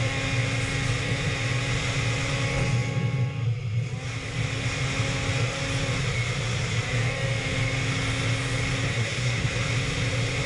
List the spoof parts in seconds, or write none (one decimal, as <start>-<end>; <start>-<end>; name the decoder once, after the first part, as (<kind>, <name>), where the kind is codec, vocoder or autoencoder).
8.9-9.5 (codec, SNAC)